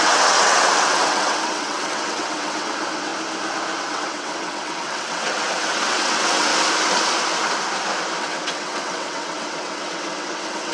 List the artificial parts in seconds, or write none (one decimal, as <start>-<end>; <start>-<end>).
0.0-3.1; 3.8-6.5; 8.2-10.7